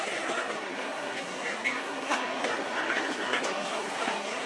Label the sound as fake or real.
fake